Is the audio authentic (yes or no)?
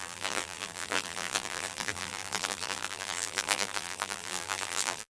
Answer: no